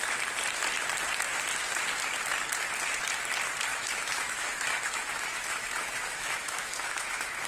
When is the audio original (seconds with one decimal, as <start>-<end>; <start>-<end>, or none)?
0.0-3.7